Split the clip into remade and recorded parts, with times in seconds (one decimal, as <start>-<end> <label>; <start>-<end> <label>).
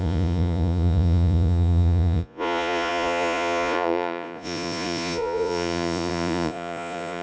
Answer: 0.0-7.2 remade